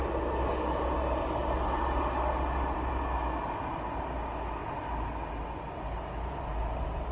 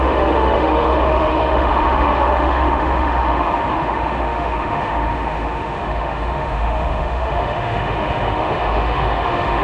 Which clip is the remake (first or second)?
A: second